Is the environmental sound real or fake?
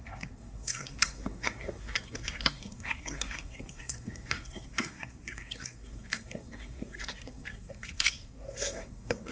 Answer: fake